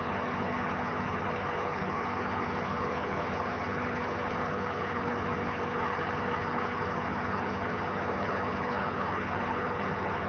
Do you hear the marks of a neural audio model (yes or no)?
yes